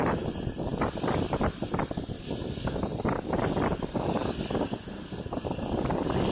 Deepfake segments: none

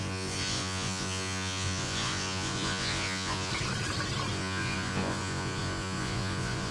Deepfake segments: 0.0-3.5; 4.3-6.7

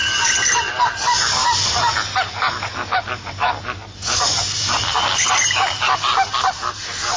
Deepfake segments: 0.0-1.4; 2.3-7.2

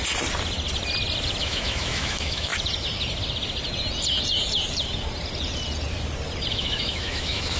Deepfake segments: 1.4-2.5; 6.5-7.6

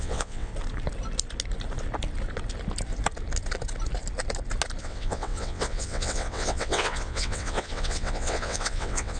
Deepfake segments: 0.0-0.5; 4.8-9.2